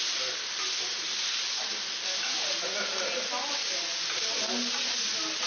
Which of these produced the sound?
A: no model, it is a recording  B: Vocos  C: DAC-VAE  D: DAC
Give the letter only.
A